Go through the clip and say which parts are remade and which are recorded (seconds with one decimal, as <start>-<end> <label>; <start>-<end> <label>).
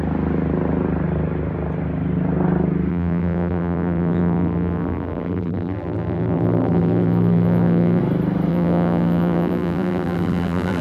0.0-2.9 recorded; 2.9-8.0 remade; 8.0-8.5 recorded; 8.5-10.8 remade